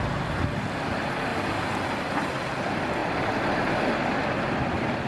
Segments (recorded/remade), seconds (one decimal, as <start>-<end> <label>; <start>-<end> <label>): 0.0-1.3 recorded; 1.3-2.2 remade; 2.2-5.1 recorded